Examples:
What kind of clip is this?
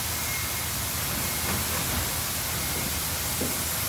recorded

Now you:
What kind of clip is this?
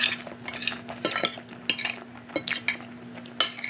recorded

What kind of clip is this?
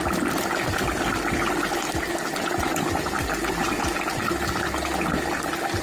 recorded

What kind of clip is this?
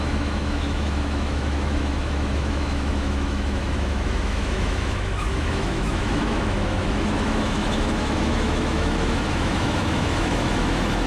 remade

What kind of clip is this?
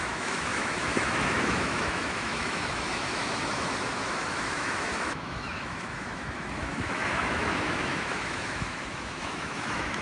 remade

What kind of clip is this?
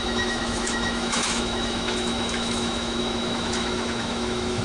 remade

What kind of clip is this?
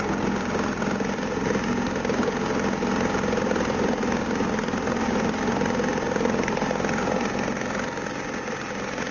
recorded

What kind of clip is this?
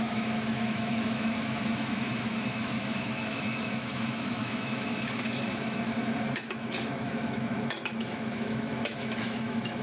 remade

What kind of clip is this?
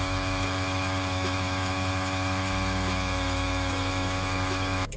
remade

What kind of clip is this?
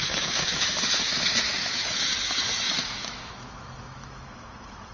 remade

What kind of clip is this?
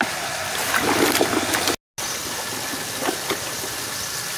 recorded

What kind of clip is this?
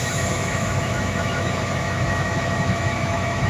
remade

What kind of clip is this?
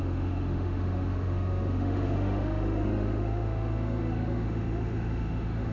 remade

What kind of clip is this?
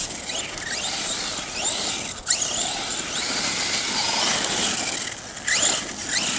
recorded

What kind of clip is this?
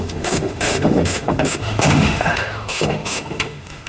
remade